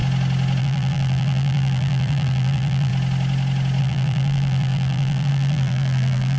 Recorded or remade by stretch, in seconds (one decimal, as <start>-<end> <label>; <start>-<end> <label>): 0.0-0.6 recorded; 0.6-2.9 remade; 2.9-3.8 recorded; 3.8-6.4 remade